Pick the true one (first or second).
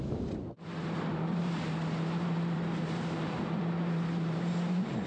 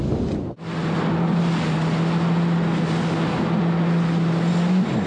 second